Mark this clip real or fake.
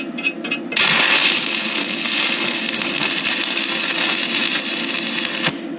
real